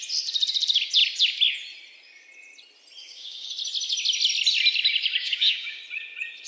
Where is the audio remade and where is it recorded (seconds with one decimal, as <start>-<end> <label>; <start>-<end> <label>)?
0.0-3.0 recorded; 3.0-3.5 remade; 3.5-5.2 recorded; 5.2-5.8 remade; 5.8-6.5 recorded